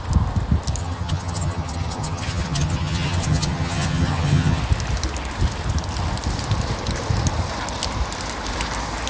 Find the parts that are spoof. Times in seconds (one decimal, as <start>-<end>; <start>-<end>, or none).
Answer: 0.8-4.6